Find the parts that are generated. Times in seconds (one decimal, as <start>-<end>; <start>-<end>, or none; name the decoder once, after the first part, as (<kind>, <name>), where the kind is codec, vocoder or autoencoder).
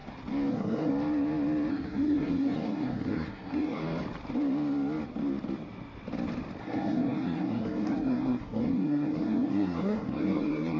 0.5-0.9 (codec, SNAC); 1.7-3.8; 6.6-10.8